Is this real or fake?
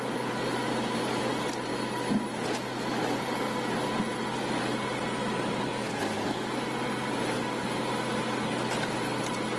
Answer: real